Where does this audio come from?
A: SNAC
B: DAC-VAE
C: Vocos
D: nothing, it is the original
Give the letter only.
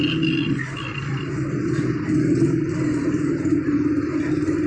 D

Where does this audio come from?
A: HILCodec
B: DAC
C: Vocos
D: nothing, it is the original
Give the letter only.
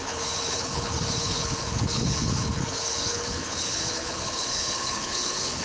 A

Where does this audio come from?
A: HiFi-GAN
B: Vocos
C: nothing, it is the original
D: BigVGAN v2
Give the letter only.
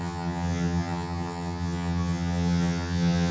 A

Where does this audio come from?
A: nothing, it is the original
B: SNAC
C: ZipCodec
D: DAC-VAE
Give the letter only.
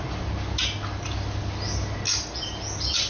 A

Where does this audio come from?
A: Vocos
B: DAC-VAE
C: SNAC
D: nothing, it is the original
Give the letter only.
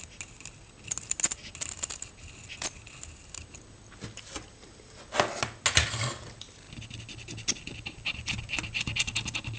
D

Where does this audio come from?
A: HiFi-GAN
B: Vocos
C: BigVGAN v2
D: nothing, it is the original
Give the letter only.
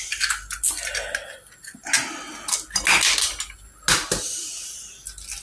D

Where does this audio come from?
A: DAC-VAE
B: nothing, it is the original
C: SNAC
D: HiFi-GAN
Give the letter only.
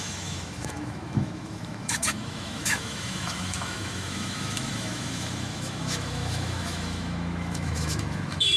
A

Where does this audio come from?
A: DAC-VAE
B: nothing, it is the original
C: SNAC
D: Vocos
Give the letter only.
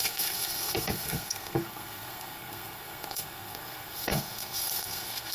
C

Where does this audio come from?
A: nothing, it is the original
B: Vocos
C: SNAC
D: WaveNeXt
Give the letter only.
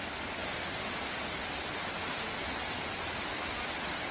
A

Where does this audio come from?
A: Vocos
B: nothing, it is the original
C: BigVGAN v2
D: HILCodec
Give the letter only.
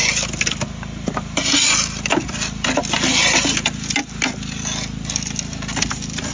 B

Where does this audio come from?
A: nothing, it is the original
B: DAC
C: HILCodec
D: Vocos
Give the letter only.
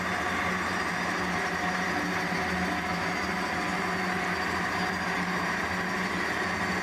A